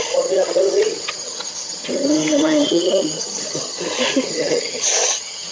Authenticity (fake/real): fake